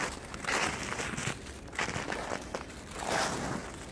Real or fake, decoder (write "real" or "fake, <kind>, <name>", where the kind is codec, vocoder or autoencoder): real